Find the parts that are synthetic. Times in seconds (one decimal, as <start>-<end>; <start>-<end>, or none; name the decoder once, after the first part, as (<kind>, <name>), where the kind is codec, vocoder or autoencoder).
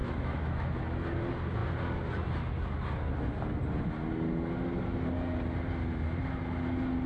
0.0-0.8 (autoencoder, DAC-VAE)